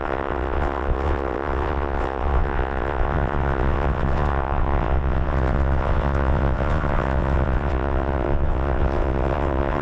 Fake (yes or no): yes